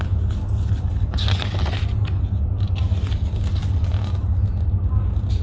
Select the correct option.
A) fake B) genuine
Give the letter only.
B